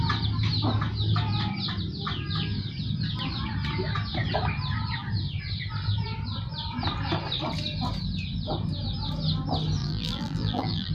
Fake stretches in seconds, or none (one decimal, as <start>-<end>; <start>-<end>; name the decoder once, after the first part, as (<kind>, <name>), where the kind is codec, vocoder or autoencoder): 9.8-10.9 (vocoder, BigVGAN v2)